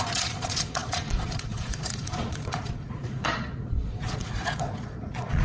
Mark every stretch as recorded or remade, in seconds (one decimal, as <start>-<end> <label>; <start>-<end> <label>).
0.0-5.4 remade